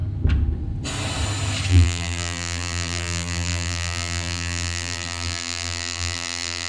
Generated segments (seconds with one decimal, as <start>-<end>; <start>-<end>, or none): 1.7-6.7